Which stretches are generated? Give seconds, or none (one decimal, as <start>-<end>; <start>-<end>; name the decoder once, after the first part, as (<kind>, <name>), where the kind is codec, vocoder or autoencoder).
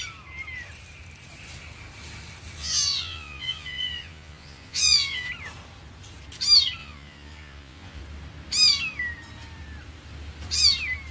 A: 2.6-5.3 (vocoder, Vocos); 6.8-8.0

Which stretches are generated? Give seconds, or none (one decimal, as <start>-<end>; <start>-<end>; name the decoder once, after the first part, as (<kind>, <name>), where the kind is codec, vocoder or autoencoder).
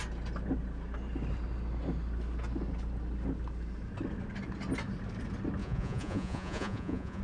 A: 5.6-7.2 (vocoder, Vocos)